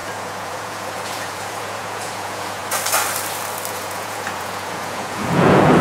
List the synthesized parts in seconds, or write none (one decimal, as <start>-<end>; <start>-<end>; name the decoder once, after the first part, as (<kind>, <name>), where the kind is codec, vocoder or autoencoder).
0.0-2.6 (vocoder, Vocos); 3.7-5.8